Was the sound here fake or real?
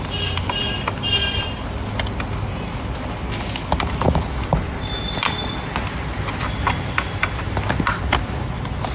real